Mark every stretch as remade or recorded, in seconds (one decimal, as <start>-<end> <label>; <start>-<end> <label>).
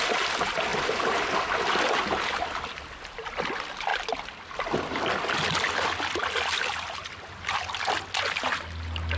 0.0-9.2 recorded